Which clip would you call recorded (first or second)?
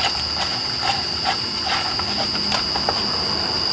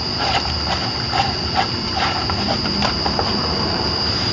first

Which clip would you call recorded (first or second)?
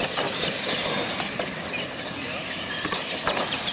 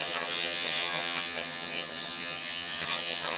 first